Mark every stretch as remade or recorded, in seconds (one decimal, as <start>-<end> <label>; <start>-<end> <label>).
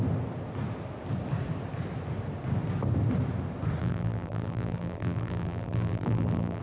0.0-3.8 recorded; 3.8-6.6 remade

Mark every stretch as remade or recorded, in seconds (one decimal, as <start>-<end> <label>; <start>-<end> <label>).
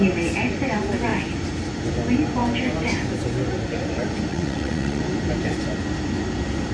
0.0-4.3 recorded; 4.3-5.0 remade; 5.0-6.7 recorded